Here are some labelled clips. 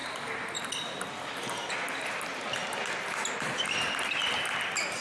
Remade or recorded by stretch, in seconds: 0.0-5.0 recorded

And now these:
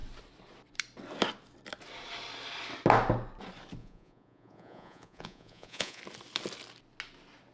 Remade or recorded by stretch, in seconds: 0.0-3.8 recorded; 3.8-6.0 remade; 6.0-7.5 recorded

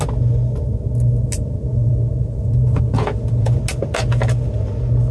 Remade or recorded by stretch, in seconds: 0.0-1.7 recorded; 1.7-3.6 remade; 3.6-5.1 recorded

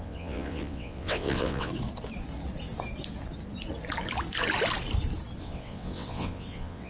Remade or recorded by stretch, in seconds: 0.0-1.7 remade; 1.7-5.4 recorded; 5.4-6.9 remade